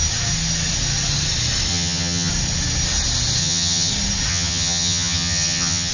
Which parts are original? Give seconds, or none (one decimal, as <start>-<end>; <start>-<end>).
0.0-1.7; 2.3-3.4; 3.9-4.3